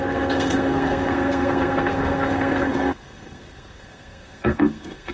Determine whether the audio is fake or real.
fake